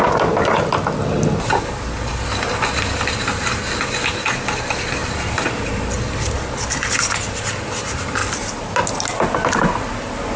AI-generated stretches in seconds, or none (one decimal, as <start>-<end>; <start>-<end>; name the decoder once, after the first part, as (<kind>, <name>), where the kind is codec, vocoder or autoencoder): 5.0-5.7 (vocoder, BigVGAN v2)